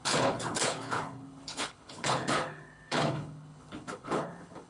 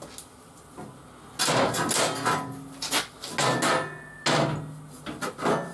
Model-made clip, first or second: first